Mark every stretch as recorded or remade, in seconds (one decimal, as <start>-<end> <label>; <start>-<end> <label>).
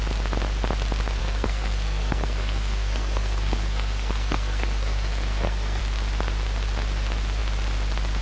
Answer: 0.0-1.2 recorded; 1.2-5.8 remade; 5.8-8.2 recorded